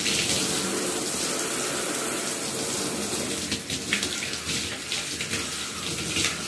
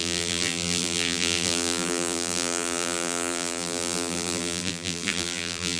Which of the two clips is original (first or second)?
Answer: first